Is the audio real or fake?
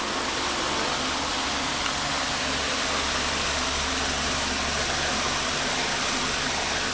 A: real